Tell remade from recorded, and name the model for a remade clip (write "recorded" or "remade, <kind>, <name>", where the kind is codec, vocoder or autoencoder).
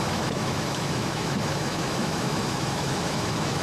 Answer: remade, autoencoder, DAC-VAE